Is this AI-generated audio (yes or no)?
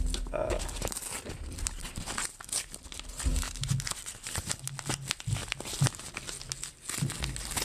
no